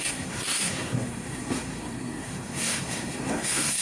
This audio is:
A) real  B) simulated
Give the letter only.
B